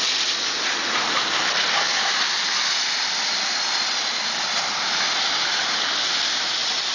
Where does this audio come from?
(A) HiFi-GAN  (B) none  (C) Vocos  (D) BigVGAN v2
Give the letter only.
D